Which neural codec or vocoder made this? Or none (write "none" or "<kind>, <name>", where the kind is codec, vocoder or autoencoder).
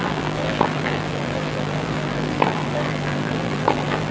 vocoder, BigVGAN v2